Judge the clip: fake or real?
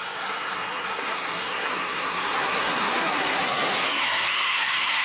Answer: fake